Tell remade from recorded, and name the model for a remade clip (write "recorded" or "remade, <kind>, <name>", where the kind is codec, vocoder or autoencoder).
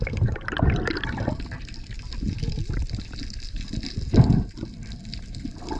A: recorded